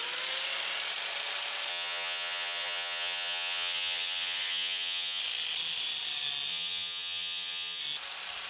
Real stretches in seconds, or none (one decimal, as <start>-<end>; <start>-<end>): 0.0-1.7; 5.2-6.5; 7.8-8.5